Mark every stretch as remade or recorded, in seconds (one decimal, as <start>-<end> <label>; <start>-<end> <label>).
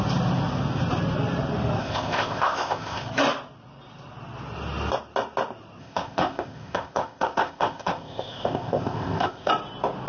0.0-1.8 recorded; 1.8-3.1 remade; 3.1-5.8 recorded; 5.8-9.5 remade; 9.5-10.1 recorded